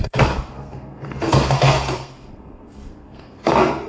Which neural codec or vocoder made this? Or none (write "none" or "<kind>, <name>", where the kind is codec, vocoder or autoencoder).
codec, SNAC